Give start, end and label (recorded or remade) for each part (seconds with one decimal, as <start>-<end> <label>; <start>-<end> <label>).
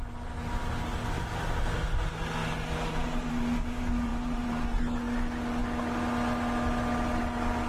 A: 0.0-7.7 recorded